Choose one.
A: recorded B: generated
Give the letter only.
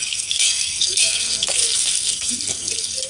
B